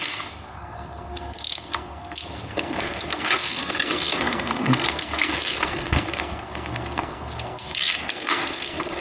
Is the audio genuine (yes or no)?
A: no